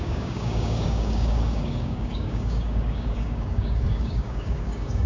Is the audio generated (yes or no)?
yes